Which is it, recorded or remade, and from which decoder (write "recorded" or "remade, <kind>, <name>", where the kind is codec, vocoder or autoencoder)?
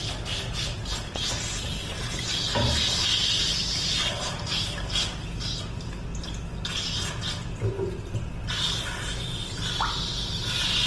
recorded